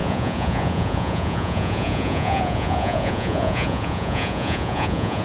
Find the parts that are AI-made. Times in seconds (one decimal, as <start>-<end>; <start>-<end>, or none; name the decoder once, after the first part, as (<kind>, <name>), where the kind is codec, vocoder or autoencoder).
0.0-5.2 (vocoder, Vocos)